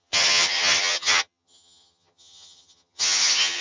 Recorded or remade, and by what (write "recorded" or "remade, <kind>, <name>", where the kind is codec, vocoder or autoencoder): remade, vocoder, HiFi-GAN